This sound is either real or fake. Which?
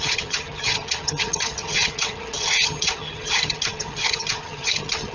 fake